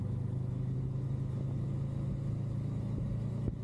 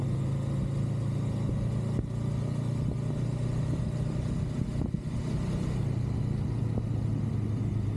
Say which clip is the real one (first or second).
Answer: second